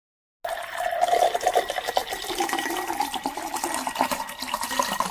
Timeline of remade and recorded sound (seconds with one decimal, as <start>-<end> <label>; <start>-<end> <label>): 0.0-5.1 recorded